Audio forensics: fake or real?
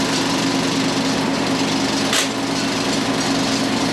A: real